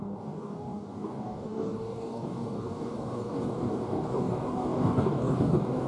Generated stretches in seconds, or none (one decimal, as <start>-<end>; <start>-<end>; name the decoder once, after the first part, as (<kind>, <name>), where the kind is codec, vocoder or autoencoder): 0.0-5.9 (codec, DAC)